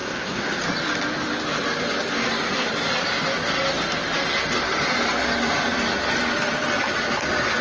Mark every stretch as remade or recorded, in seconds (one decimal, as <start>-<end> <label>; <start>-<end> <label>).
0.0-0.6 remade; 0.6-7.6 recorded